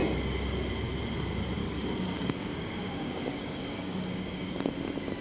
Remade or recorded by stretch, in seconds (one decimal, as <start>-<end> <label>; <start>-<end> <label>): 0.0-1.6 recorded; 1.6-4.6 remade; 4.6-5.2 recorded